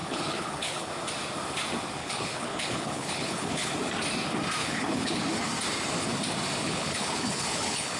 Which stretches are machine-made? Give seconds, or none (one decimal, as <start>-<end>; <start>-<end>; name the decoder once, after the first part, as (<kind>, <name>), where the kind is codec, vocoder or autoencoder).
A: 0.0-0.9 (codec, HILCodec); 2.0-3.7; 4.6-5.2; 6.6-8.0